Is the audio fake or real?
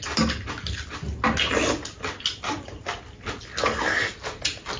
real